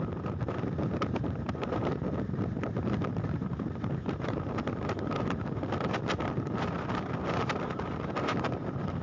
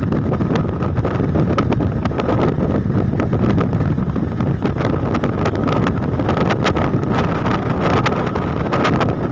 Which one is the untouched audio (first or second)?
second